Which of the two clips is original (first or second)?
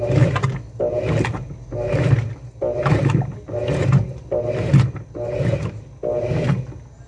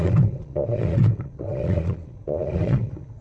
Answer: first